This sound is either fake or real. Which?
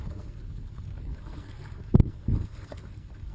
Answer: fake